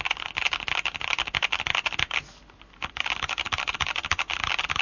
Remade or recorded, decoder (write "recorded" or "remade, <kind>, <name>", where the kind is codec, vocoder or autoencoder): recorded